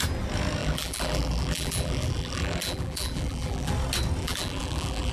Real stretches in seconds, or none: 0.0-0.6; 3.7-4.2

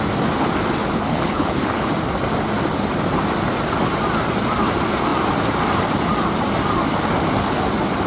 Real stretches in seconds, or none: 0.0-0.8; 1.9-8.1

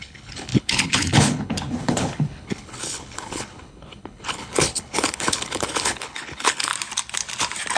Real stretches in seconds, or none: 6.7-7.8

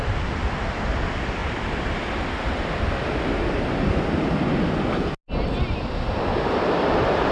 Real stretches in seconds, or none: 0.0-7.3

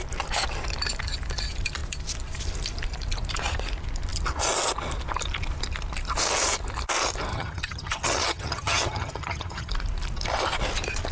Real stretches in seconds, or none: 0.0-7.3; 9.7-11.1